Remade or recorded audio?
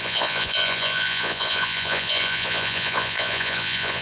remade